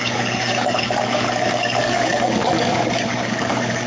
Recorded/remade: remade